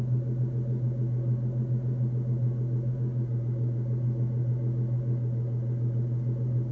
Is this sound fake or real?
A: real